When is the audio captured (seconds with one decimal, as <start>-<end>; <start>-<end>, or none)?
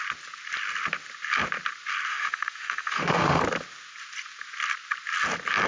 0.0-2.1; 3.4-5.7